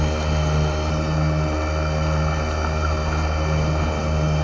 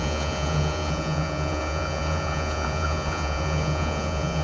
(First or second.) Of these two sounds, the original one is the first